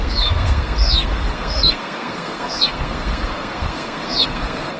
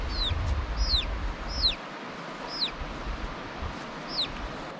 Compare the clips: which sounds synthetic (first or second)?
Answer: first